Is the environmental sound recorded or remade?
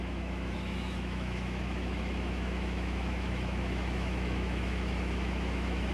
remade